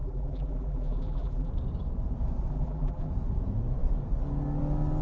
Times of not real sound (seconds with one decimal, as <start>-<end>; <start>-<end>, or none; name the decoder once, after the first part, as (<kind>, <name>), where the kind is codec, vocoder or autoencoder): 0.0-1.5 (vocoder, BigVGAN v2); 2.5-3.1